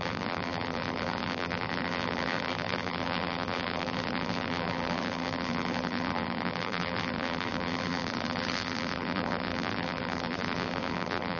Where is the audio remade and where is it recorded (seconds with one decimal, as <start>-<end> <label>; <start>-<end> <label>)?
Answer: 0.0-11.4 remade